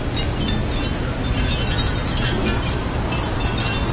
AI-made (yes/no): no